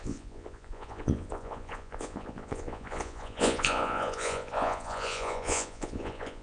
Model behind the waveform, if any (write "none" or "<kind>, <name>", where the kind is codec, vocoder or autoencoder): vocoder, Vocos